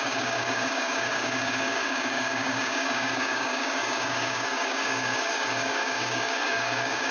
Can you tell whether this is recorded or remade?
remade